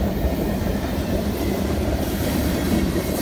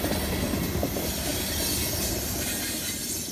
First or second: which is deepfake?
first